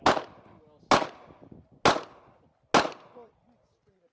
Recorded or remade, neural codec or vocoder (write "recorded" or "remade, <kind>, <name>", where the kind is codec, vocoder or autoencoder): recorded